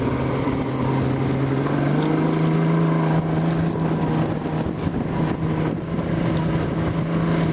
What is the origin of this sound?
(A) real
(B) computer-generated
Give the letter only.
A